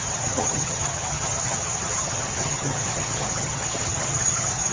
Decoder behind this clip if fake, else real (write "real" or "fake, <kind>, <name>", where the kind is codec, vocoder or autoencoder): fake, vocoder, HiFi-GAN